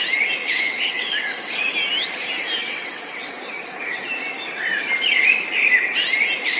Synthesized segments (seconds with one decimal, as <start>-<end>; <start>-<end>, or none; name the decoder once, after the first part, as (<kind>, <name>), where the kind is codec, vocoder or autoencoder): 0.4-1.5 (vocoder, WaveNeXt); 2.6-3.3